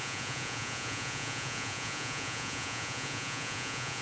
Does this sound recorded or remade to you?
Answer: remade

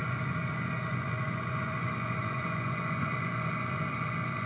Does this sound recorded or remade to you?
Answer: remade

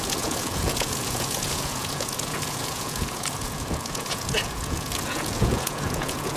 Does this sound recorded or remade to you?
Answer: remade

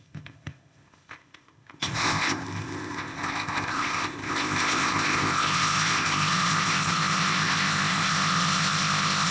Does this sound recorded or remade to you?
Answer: remade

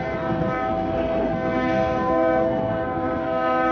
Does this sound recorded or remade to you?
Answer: remade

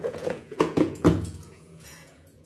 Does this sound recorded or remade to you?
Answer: remade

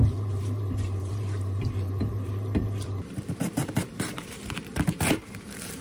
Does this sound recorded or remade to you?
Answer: remade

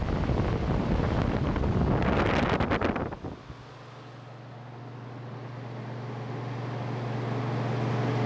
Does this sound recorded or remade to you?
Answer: recorded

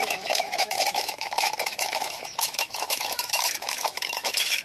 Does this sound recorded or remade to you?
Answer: remade